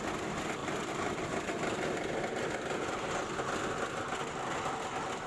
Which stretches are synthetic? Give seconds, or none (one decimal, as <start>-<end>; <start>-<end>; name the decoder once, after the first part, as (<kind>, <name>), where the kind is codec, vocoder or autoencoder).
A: none